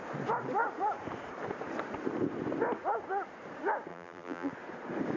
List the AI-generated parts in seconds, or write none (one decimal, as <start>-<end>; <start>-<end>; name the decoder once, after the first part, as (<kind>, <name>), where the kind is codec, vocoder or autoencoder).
3.9-4.5 (vocoder, BigVGAN v2)